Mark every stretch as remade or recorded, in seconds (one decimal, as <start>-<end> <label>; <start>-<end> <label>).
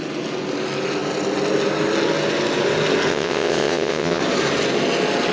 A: 0.0-3.1 recorded; 3.1-4.2 remade; 4.2-5.3 recorded